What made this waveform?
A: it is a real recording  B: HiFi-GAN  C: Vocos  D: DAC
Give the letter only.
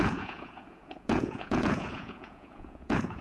C